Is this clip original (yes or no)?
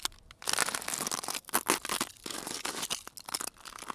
yes